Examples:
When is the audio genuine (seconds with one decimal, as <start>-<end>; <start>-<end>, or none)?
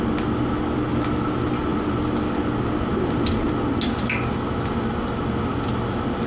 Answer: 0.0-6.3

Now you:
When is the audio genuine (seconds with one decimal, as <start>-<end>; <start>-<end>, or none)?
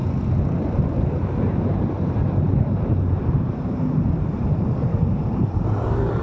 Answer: 0.0-0.9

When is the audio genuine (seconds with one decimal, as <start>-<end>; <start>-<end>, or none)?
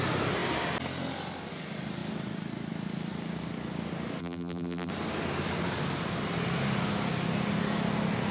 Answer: 0.0-4.2; 4.9-8.3